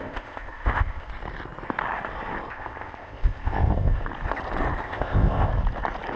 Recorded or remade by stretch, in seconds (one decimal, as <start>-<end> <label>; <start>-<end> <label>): 0.0-1.1 remade; 1.1-2.5 recorded; 2.5-4.0 remade; 4.0-4.8 recorded; 4.8-5.5 remade; 5.5-6.2 recorded